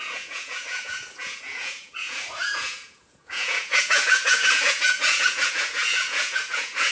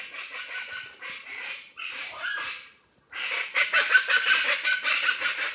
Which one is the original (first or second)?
second